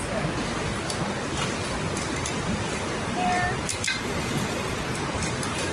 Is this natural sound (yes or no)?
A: yes